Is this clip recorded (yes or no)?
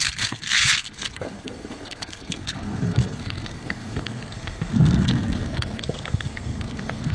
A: no